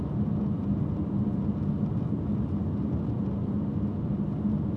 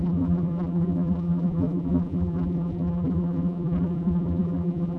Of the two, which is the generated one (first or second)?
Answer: second